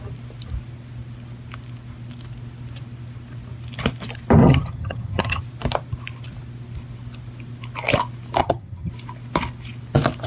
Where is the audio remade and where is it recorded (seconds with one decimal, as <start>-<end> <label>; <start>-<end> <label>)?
0.0-4.4 recorded; 4.4-5.4 remade; 5.4-8.4 recorded; 8.4-8.9 remade; 8.9-10.3 recorded